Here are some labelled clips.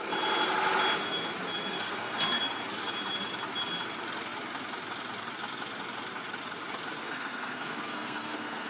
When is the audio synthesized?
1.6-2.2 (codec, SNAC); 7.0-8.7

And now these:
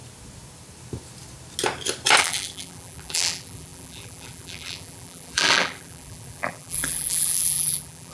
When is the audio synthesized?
2.2-8.1 (vocoder, BigVGAN v2)